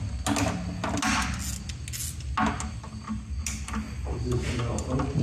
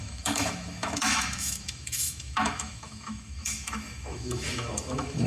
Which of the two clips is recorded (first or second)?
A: first